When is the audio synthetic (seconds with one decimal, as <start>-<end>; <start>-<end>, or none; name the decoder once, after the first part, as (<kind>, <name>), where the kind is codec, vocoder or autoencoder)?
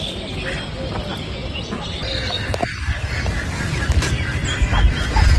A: none